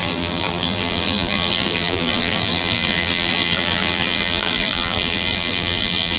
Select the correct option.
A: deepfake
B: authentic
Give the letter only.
A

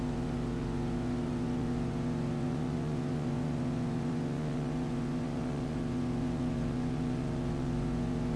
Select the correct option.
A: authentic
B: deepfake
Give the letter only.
B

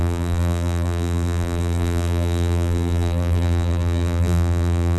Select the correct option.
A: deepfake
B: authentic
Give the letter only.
A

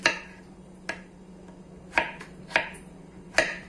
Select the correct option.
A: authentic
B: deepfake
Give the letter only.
A